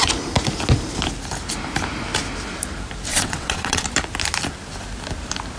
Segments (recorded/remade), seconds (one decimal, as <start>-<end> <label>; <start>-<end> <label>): 0.0-3.1 recorded; 3.1-3.8 remade; 3.8-5.6 recorded